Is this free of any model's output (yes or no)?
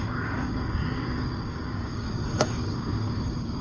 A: no